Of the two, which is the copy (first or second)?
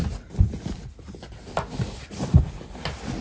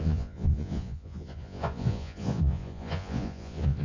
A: second